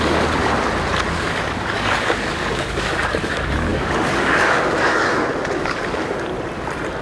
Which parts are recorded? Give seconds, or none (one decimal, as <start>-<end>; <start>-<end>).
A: 0.4-1.1; 6.3-7.0